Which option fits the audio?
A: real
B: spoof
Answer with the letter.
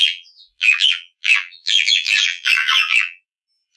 B